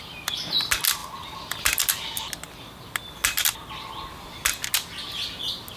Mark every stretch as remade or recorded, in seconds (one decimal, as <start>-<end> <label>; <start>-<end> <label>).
0.0-5.8 recorded

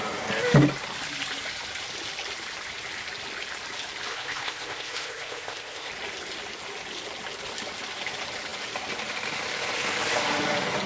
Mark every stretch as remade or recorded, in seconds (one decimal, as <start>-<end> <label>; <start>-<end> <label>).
0.0-4.1 recorded; 4.1-5.9 remade; 5.9-10.9 recorded

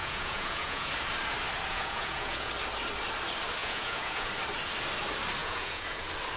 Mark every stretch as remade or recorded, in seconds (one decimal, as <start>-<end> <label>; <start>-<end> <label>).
0.0-0.9 remade; 0.9-1.7 recorded; 1.7-2.5 remade; 2.5-3.6 recorded; 3.6-4.3 remade; 4.3-5.4 recorded; 5.4-6.0 remade; 6.0-6.4 recorded

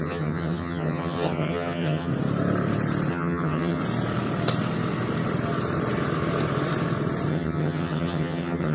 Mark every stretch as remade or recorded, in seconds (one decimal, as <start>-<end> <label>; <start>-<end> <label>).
0.0-2.1 remade; 2.1-3.1 recorded; 3.1-3.8 remade; 3.8-7.3 recorded; 7.3-8.7 remade

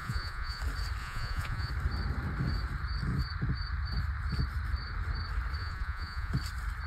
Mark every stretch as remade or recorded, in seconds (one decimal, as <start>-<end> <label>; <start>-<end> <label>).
0.0-0.6 remade; 0.6-1.0 recorded; 1.0-1.7 remade; 1.7-5.6 recorded; 5.6-6.3 remade; 6.3-6.9 recorded